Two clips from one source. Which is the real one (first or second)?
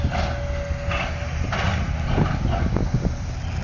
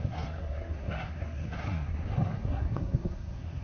first